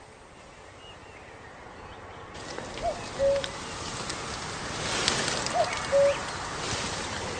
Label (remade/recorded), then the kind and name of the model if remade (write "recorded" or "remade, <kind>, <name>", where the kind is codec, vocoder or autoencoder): recorded